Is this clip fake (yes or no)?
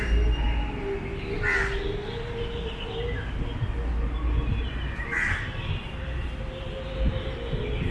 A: no